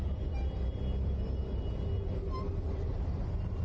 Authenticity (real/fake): real